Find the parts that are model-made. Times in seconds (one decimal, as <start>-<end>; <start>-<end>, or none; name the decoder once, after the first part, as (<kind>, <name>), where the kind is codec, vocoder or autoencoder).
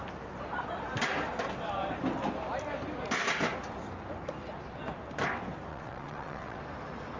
5.7-6.6 (vocoder, WaveNeXt)